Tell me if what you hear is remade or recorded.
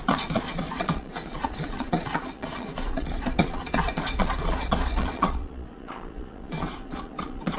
remade